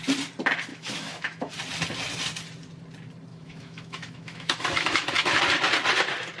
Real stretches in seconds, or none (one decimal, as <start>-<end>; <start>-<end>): 0.0-0.7; 1.5-3.3; 5.4-6.4